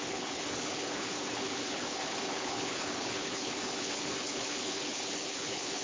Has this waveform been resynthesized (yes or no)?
yes